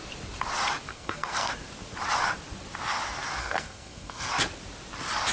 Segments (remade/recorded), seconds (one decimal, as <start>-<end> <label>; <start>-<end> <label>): 0.0-0.9 recorded; 0.9-1.5 remade; 1.5-3.4 recorded; 3.4-4.3 remade; 4.3-5.3 recorded